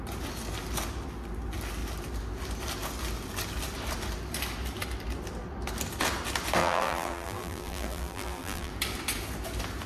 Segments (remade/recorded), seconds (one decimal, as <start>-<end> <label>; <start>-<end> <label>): 0.0-6.6 recorded; 6.6-8.7 remade; 8.7-9.9 recorded